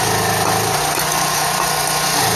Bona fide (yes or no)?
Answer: yes